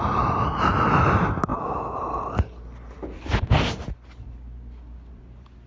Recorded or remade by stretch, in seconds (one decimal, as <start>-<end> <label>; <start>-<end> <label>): 0.0-5.7 recorded